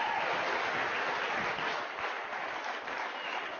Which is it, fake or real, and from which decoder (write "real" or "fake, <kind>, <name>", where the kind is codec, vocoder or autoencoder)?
real